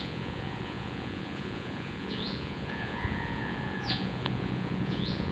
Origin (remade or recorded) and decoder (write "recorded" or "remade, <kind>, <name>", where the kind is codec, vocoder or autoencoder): remade, vocoder, Vocos